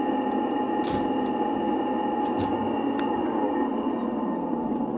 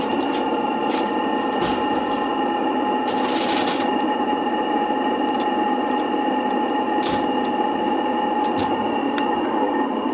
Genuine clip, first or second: first